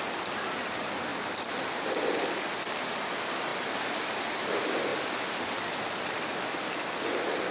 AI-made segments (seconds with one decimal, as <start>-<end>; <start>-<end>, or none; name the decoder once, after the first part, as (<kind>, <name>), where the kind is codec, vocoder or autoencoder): none